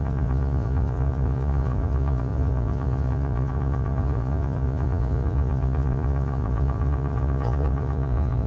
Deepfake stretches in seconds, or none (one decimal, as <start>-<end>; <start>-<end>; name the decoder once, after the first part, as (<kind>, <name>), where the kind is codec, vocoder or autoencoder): 0.0-8.5 (vocoder, Vocos)